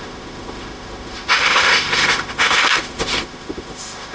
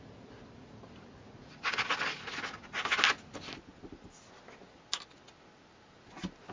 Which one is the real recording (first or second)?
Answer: second